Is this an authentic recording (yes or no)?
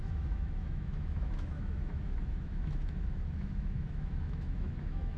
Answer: no